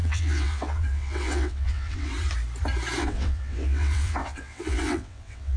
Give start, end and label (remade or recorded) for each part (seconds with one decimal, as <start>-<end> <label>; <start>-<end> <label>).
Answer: 0.0-2.1 remade; 2.1-3.0 recorded; 3.0-5.6 remade